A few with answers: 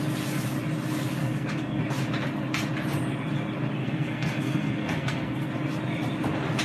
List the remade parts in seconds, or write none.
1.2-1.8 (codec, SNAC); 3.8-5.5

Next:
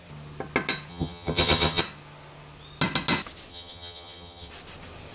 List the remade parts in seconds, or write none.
0.9-1.8 (vocoder, HiFi-GAN); 3.5-4.5

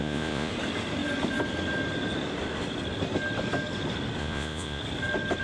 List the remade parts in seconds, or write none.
0.0-0.5 (vocoder, Vocos); 4.2-4.8

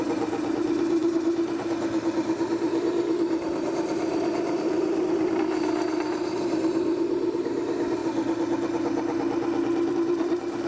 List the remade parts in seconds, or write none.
0.0-8.0 (vocoder, BigVGAN v2); 9.9-10.7

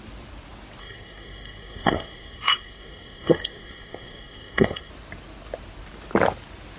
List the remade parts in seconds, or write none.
0.8-4.9 (codec, SNAC)